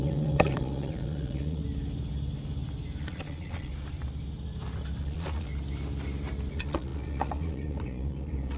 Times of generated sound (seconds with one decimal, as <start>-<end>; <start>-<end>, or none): 0.0-1.6; 3.0-3.7; 5.0-5.5; 6.5-8.6